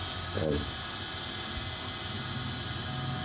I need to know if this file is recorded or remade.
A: recorded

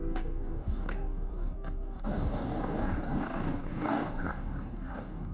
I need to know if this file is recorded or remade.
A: remade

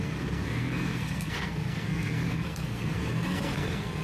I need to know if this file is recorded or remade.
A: remade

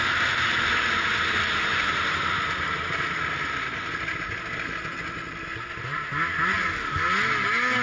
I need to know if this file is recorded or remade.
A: recorded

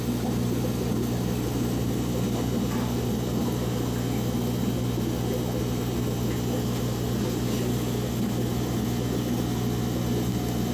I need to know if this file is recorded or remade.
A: recorded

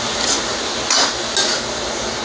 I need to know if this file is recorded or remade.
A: recorded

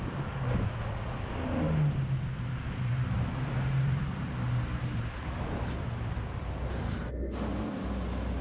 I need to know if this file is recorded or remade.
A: recorded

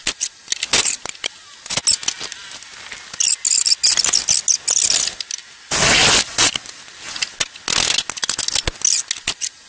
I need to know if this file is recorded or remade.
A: recorded